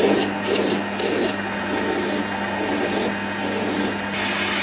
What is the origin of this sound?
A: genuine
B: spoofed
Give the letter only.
A